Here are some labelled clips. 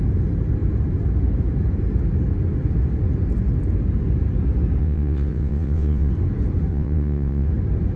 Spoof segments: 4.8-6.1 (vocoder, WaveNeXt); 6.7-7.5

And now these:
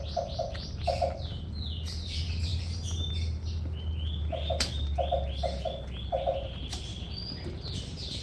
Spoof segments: none

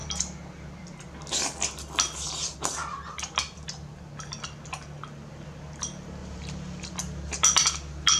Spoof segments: 6.2-6.9 (vocoder, BigVGAN v2)

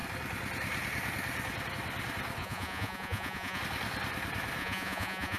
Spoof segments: 2.4-3.6 (vocoder, Vocos); 4.6-5.4

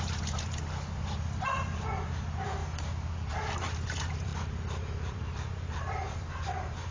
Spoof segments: 0.0-2.6 (vocoder, BigVGAN v2); 3.3-4.3; 5.1-6.9

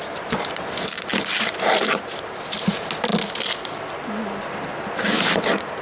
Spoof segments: none

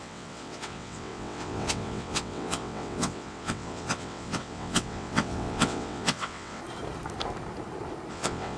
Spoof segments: 0.0-6.6 (vocoder, WaveNeXt); 8.1-8.6